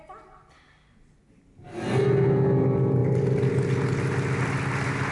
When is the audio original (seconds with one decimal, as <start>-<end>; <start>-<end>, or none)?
0.0-5.1